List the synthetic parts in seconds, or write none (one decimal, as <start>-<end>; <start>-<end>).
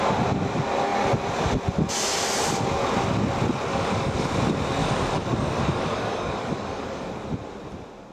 3.7-4.3; 4.8-7.1